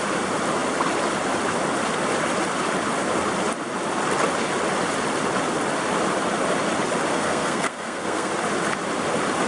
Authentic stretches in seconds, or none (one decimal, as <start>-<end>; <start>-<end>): 0.0-7.1; 8.3-9.5